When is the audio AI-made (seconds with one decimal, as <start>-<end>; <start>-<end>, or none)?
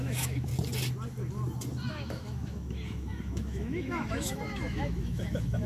0.0-0.5; 1.9-5.7